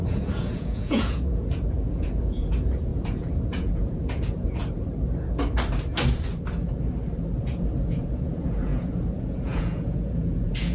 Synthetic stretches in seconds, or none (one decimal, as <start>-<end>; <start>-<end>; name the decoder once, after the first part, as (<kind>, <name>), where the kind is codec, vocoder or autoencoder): 0.0-4.6 (vocoder, Vocos); 7.4-10.7